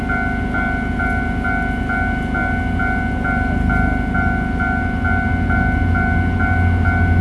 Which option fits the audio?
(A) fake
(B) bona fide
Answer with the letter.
B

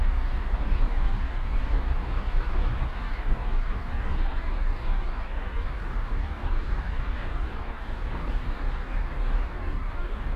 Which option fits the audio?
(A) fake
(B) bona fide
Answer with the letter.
A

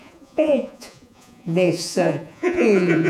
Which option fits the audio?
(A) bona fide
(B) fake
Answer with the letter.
B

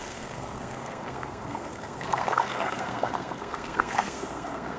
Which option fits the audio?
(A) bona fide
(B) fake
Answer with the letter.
B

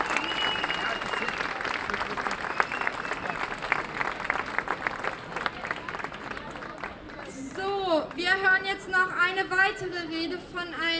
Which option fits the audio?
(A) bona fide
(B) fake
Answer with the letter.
A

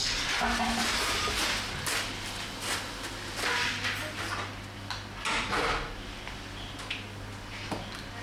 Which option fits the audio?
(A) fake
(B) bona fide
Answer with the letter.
B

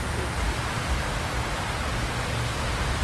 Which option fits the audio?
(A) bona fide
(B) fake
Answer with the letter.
A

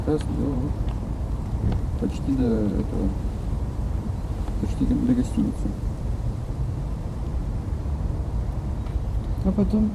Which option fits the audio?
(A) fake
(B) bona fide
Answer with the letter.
A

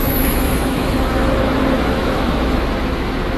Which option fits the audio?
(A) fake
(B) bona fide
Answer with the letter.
A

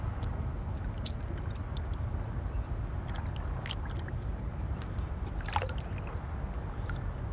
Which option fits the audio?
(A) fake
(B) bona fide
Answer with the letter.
B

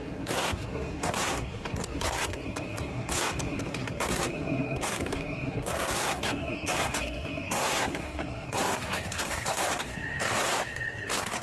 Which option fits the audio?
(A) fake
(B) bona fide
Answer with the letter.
A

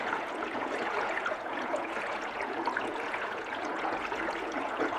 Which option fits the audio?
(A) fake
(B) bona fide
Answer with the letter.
A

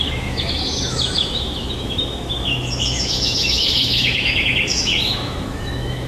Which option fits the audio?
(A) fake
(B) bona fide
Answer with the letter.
A